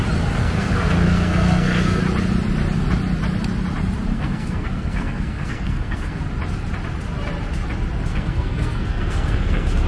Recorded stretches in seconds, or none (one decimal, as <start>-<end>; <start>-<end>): 0.0-0.4; 2.0-4.1; 6.2-8.1